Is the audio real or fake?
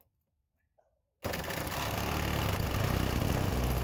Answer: real